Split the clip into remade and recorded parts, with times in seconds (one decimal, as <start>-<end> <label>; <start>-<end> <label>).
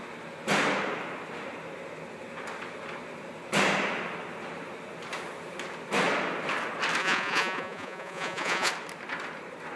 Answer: 0.0-7.0 recorded; 7.0-8.7 remade; 8.7-9.8 recorded